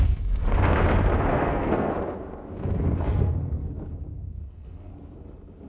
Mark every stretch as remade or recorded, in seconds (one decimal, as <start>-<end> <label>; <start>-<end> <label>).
0.0-1.3 recorded; 1.3-1.9 remade; 1.9-3.1 recorded; 3.1-4.9 remade; 4.9-5.7 recorded